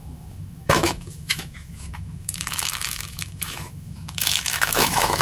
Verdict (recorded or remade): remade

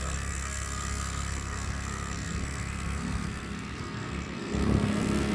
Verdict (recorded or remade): remade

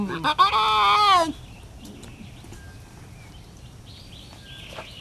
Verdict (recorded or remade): recorded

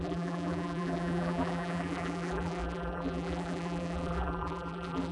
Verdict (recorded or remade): remade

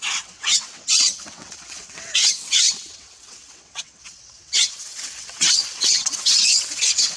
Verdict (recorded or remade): remade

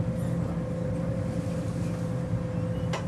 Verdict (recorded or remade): recorded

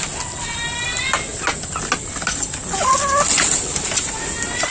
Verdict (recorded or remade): recorded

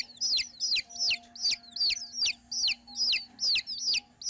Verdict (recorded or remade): recorded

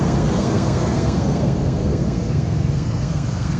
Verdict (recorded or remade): remade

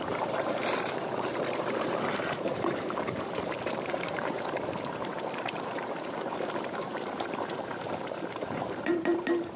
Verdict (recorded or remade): remade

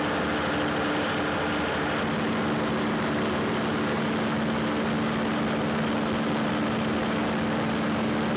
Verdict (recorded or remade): recorded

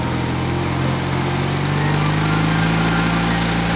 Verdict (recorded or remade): recorded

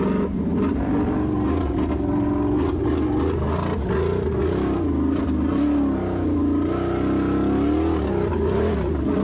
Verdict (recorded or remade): recorded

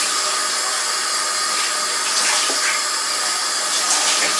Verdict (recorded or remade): recorded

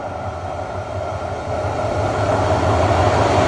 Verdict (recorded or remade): recorded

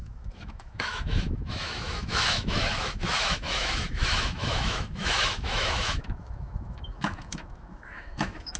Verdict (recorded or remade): remade